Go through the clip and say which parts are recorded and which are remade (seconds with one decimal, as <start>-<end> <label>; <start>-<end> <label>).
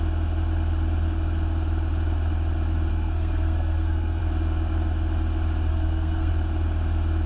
0.0-2.9 recorded; 2.9-4.2 remade; 4.2-5.7 recorded; 5.7-6.3 remade; 6.3-7.3 recorded